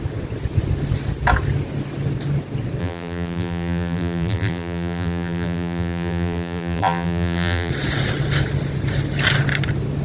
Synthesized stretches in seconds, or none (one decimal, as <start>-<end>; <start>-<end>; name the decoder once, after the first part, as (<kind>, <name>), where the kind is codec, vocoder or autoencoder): 2.8-7.7 (vocoder, BigVGAN v2)